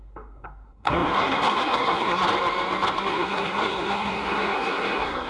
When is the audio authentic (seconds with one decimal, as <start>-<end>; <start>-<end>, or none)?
2.2-3.1